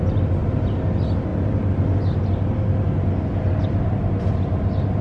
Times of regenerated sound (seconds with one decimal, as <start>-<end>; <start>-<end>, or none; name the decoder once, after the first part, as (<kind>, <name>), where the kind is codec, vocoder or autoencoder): none